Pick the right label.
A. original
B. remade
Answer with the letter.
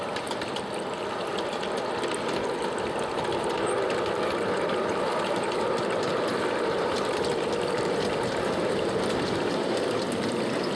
A